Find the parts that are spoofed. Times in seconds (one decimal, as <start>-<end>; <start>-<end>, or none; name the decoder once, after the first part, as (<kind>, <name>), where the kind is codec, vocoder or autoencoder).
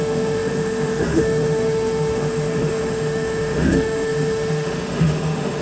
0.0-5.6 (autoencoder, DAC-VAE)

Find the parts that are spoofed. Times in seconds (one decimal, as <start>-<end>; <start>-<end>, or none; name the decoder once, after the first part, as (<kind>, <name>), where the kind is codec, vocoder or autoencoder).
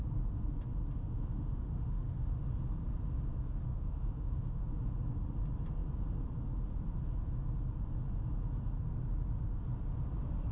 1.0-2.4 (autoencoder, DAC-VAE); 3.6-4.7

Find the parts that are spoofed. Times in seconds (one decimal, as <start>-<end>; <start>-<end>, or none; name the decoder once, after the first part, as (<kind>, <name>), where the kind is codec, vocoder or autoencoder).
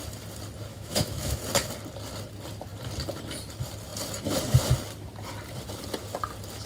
0.7-1.4 (autoencoder, DAC-VAE)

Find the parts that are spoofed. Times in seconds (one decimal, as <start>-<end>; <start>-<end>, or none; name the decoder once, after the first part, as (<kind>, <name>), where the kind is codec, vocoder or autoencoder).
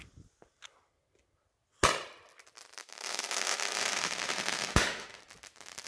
2.8-5.2 (autoencoder, DAC-VAE)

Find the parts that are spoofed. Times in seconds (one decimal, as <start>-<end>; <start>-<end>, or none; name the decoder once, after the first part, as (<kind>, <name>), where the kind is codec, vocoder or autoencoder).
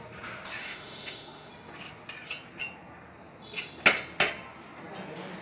0.6-1.5 (autoencoder, DAC-VAE)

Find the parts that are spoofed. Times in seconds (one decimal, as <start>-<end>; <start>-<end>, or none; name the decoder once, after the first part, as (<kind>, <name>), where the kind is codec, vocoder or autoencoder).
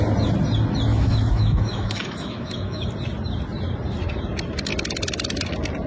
0.9-2.9 (autoencoder, DAC-VAE)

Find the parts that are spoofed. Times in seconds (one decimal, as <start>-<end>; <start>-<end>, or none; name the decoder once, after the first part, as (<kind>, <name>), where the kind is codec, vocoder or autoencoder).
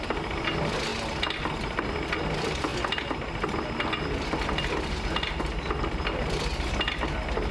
none